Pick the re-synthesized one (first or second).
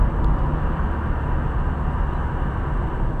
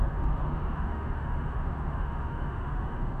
second